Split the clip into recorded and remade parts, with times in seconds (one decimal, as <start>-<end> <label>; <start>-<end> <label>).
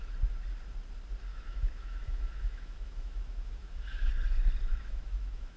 0.0-1.3 recorded; 1.3-4.1 remade; 4.1-4.7 recorded; 4.7-5.6 remade